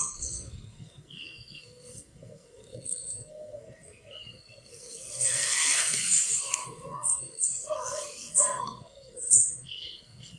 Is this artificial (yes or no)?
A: yes